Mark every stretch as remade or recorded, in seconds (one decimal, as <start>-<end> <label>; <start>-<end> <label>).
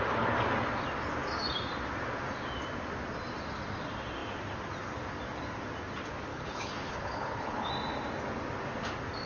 0.0-6.3 recorded; 6.3-7.7 remade; 7.7-9.3 recorded